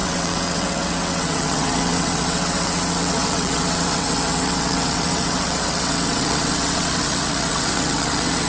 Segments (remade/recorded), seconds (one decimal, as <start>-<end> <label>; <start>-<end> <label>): 0.0-8.5 remade